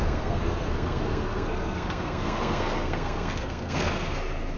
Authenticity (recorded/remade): remade